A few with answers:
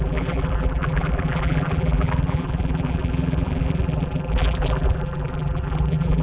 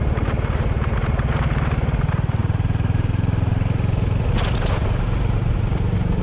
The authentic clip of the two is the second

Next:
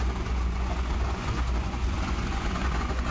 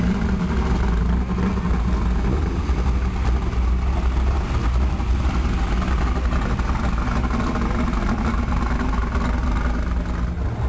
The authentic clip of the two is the second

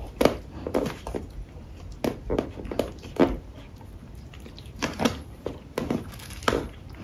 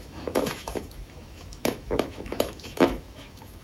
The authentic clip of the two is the first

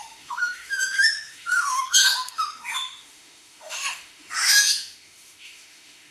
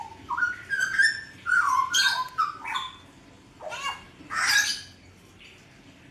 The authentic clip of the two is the second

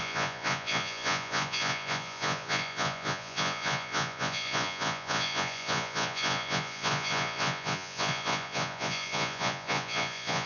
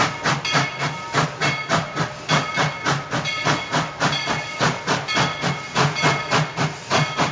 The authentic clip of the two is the second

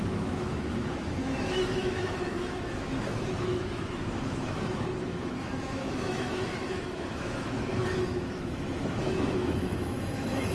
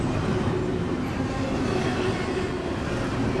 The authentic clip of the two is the second